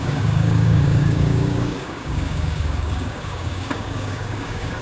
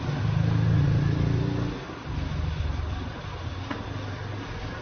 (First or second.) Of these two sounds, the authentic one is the second